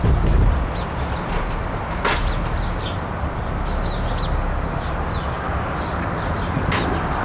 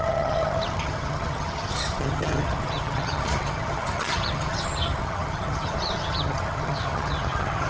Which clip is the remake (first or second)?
second